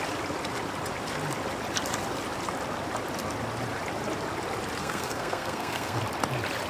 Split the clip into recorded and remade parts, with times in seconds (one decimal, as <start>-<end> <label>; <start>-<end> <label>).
0.0-4.8 recorded; 4.8-6.0 remade; 6.0-6.7 recorded